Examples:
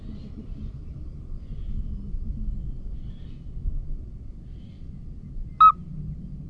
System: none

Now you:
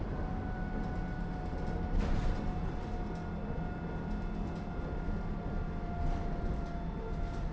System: none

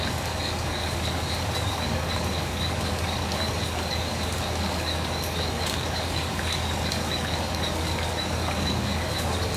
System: codec, DAC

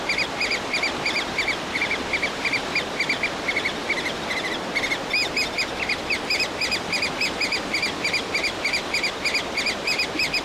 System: vocoder, BigVGAN v2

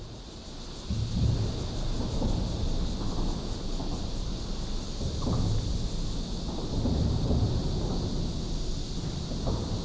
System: none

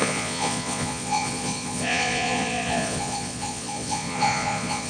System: vocoder, Vocos